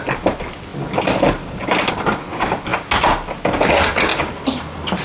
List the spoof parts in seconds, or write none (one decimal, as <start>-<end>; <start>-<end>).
none